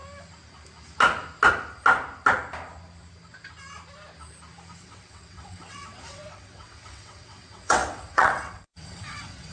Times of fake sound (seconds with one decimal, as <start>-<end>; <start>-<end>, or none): 4.8-9.5